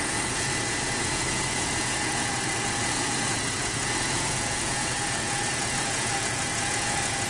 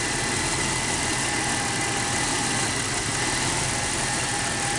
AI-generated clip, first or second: first